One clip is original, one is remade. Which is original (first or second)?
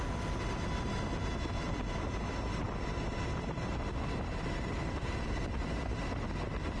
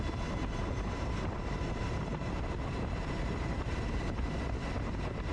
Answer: first